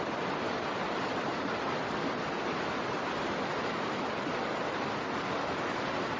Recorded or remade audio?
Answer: recorded